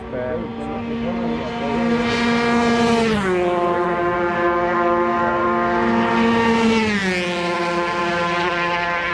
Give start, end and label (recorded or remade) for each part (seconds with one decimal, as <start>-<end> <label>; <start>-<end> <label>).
0.0-9.1 recorded